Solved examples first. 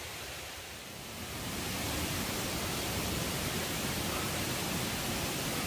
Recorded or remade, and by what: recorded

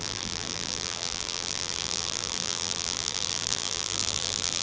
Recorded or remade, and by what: remade, vocoder, BigVGAN v2